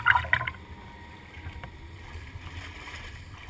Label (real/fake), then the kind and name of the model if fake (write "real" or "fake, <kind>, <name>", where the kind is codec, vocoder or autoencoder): real